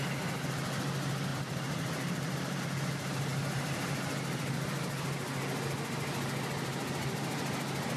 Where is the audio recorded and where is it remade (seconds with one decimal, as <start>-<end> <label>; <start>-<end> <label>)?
0.0-1.3 recorded; 1.3-2.6 remade; 2.6-8.0 recorded